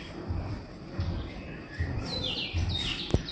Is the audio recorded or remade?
recorded